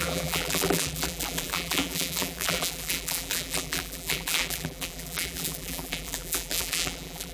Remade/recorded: remade